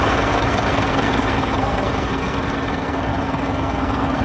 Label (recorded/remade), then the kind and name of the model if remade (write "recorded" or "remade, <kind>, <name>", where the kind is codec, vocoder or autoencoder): remade, codec, SNAC